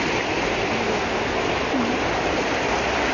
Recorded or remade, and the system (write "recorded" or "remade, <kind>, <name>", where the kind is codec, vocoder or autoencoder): recorded